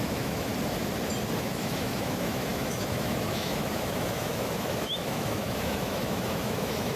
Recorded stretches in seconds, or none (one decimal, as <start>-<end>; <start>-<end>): 0.5-1.4